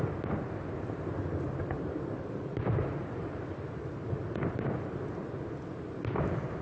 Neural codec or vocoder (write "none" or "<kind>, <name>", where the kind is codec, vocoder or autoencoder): none